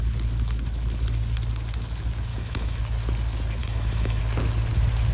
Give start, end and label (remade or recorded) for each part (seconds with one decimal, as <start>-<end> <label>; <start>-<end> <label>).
0.0-2.3 recorded; 2.3-2.8 remade; 2.8-3.6 recorded; 3.6-4.2 remade; 4.2-5.1 recorded